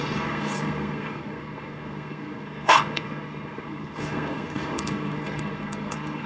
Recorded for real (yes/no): no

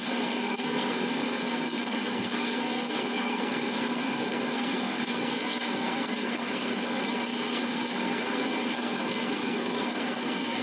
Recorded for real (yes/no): no